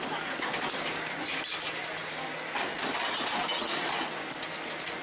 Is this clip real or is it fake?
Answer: real